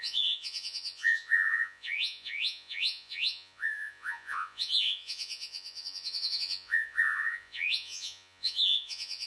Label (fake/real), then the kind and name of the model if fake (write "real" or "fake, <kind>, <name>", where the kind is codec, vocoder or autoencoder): fake, vocoder, Vocos